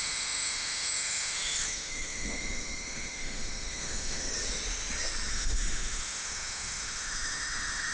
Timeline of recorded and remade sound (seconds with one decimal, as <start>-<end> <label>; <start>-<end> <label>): 0.0-4.3 remade; 4.3-5.3 recorded; 5.3-7.9 remade